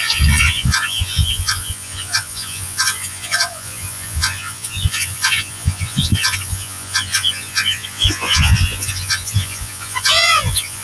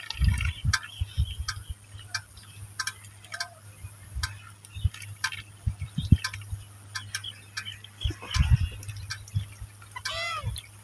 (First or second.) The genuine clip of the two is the second